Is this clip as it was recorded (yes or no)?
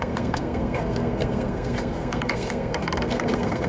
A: no